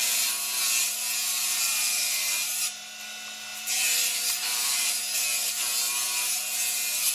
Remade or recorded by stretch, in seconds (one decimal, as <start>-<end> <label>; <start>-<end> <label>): 0.0-1.3 recorded; 1.3-2.6 remade; 2.6-3.5 recorded; 3.5-5.0 remade; 5.0-7.1 recorded